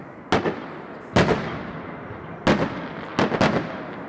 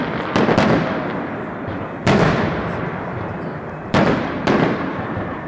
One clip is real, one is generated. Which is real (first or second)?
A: first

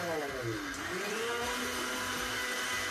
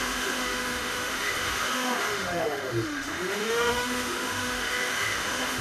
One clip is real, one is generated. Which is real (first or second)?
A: first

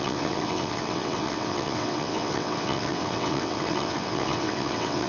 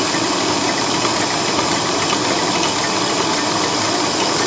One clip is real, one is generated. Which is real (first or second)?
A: second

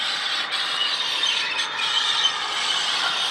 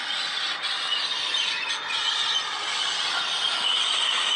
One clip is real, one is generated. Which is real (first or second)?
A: second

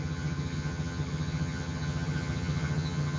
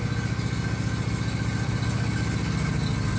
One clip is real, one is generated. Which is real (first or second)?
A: second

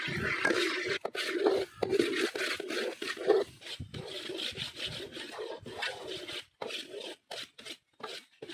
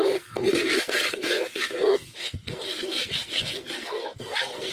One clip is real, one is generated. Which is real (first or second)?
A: first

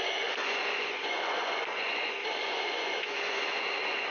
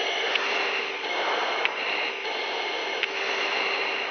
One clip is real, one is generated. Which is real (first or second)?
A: second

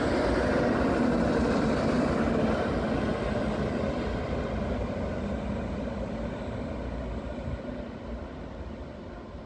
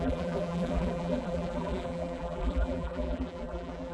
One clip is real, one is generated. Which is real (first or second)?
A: first